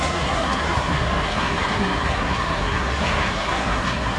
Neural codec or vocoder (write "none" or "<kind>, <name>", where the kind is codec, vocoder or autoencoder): codec, SNAC